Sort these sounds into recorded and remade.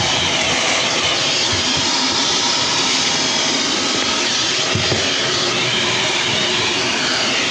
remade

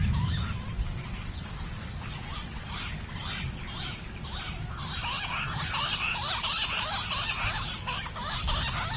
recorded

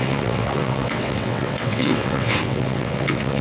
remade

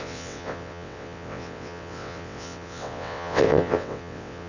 remade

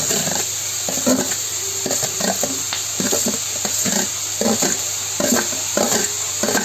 recorded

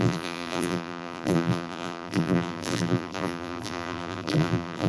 remade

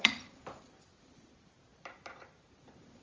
remade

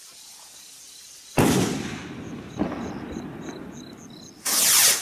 recorded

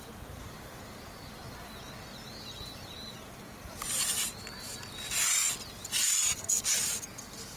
recorded